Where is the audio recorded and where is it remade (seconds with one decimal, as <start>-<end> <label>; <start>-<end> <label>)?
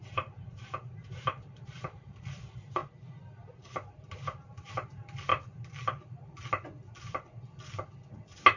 0.0-2.8 remade; 2.8-4.5 recorded; 4.5-5.3 remade; 5.3-8.6 recorded